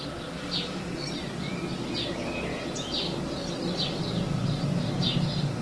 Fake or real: real